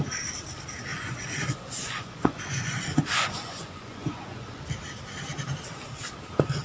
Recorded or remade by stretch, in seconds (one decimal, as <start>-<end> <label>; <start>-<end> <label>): 0.0-0.9 recorded; 0.9-4.6 remade; 4.6-6.6 recorded